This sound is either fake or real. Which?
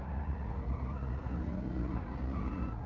fake